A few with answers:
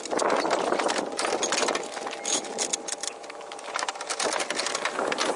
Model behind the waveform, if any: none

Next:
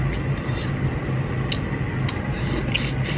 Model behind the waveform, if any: none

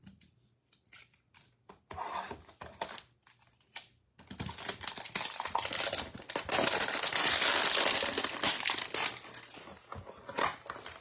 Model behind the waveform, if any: none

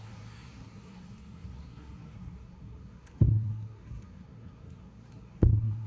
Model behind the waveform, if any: codec, SNAC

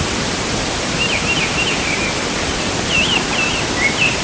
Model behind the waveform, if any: vocoder, BigVGAN v2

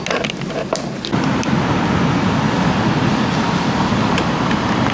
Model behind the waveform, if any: none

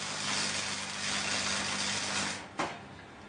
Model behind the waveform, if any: none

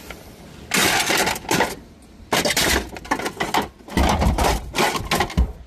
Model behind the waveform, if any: none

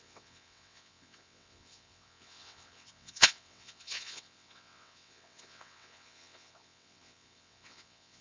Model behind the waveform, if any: vocoder, WaveNeXt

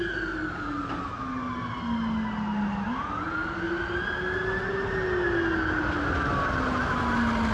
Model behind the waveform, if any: none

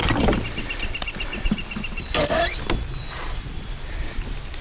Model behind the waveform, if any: vocoder, BigVGAN v2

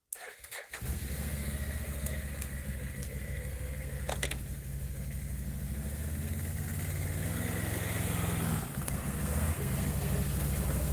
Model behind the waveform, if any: codec, SNAC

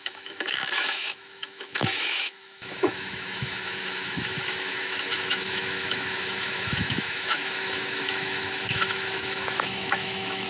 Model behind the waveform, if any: autoencoder, DAC-VAE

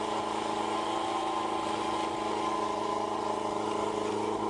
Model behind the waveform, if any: none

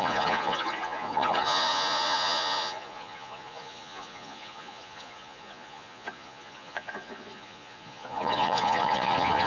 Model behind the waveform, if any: vocoder, Vocos